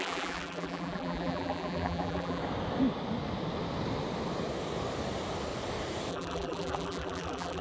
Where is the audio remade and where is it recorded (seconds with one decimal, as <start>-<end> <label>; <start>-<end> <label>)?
0.0-2.4 remade; 2.4-6.1 recorded; 6.1-7.6 remade